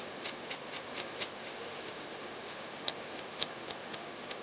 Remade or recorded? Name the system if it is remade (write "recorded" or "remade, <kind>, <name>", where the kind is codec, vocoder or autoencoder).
remade, autoencoder, DAC-VAE